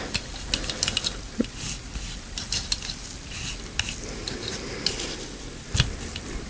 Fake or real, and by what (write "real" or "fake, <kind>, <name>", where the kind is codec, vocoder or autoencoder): real